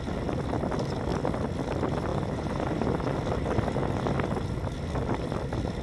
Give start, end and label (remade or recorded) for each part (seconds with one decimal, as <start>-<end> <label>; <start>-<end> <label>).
0.0-2.1 recorded; 2.1-2.7 remade; 2.7-5.8 recorded